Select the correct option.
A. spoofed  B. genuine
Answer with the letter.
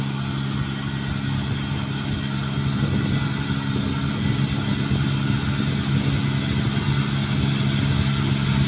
B